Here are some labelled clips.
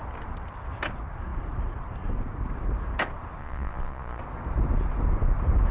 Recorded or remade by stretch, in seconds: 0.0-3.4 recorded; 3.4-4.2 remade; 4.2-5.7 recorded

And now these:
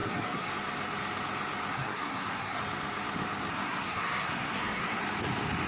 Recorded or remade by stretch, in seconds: 0.0-0.5 remade; 0.5-1.7 recorded; 1.7-2.6 remade; 2.6-3.5 recorded; 3.5-5.0 remade; 5.0-5.7 recorded

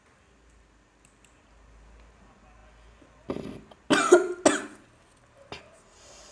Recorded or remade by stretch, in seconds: 0.0-6.3 recorded

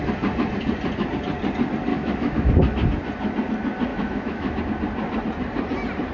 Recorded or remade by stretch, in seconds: 0.0-1.9 recorded; 1.9-2.5 remade; 2.5-3.9 recorded; 3.9-4.6 remade; 4.6-6.1 recorded

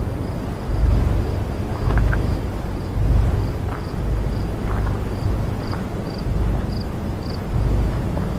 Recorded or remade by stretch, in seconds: 0.0-1.7 recorded; 1.7-2.4 remade; 2.4-8.4 recorded

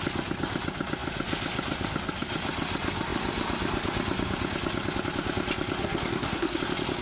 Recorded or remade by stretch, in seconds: 0.0-5.8 recorded; 5.8-6.6 remade; 6.6-7.0 recorded

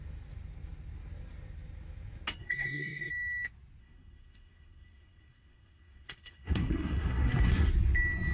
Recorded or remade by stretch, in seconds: 0.0-2.4 recorded; 2.4-3.1 remade; 3.1-3.8 recorded; 3.8-7.7 remade; 7.7-8.3 recorded

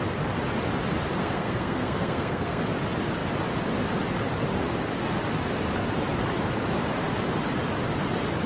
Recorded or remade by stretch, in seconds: 0.0-1.2 recorded; 1.2-2.6 remade; 2.6-8.5 recorded